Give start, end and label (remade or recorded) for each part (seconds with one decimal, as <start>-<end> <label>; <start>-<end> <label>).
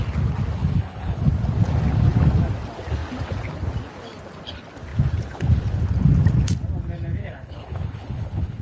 0.0-0.6 recorded; 0.6-1.3 remade; 1.3-7.2 recorded; 7.2-8.6 remade